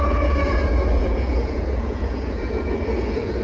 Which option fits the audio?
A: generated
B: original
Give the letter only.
A